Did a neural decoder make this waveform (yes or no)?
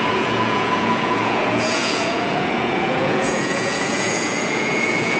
yes